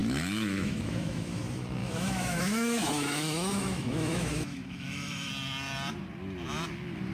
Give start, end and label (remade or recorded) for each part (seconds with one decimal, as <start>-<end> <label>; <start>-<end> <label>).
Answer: 0.0-1.4 remade; 1.4-1.8 recorded; 1.8-5.3 remade; 5.3-7.1 recorded